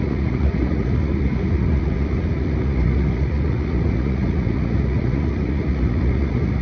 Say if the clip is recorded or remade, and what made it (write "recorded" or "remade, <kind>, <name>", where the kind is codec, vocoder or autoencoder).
remade, vocoder, Vocos